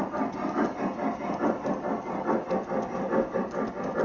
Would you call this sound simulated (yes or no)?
no